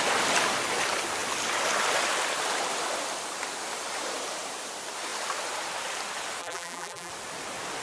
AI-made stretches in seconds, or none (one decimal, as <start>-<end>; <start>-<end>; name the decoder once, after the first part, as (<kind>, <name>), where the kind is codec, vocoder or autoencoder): 6.4-7.1 (vocoder, BigVGAN v2)